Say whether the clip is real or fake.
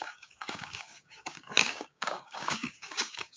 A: fake